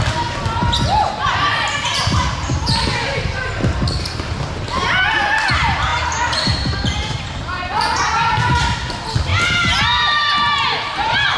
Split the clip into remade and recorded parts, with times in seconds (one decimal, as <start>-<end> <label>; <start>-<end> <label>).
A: 0.0-5.9 recorded; 5.9-8.1 remade; 8.1-11.4 recorded